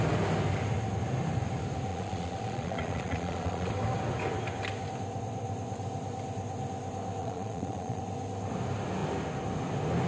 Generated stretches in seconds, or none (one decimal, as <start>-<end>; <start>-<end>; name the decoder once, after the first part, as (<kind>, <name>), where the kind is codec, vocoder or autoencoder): 1.9-3.7 (vocoder, Vocos); 7.2-8.0